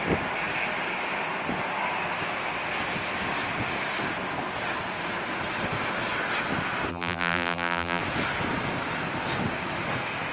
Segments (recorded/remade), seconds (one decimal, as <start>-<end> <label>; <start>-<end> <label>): 0.0-6.9 recorded; 6.9-8.0 remade; 8.0-10.3 recorded

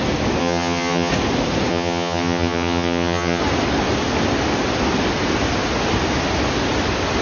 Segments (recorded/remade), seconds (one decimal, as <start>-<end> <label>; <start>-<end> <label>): 0.0-0.4 recorded; 0.4-1.1 remade; 1.1-1.7 recorded; 1.7-3.4 remade; 3.4-7.2 recorded

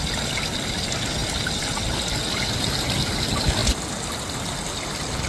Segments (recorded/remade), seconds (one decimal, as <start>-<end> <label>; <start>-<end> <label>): 0.0-5.3 recorded

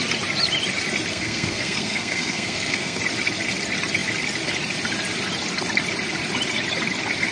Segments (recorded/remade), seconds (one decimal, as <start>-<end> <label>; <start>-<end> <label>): 0.0-1.1 recorded; 1.1-3.0 remade; 3.0-7.3 recorded

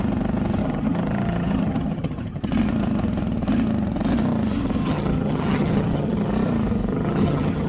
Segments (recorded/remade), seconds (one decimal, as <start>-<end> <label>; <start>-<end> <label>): 0.0-0.6 recorded; 0.6-2.4 remade; 2.4-4.8 recorded; 4.8-6.3 remade; 6.3-6.9 recorded; 6.9-7.7 remade